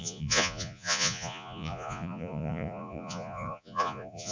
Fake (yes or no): yes